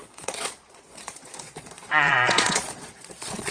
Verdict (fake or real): fake